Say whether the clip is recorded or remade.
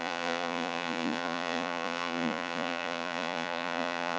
remade